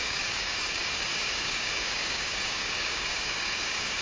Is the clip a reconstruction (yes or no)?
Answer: yes